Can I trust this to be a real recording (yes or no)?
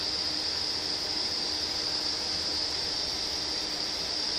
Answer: yes